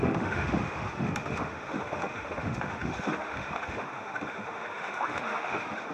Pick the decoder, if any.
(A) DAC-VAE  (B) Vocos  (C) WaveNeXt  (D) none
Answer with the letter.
A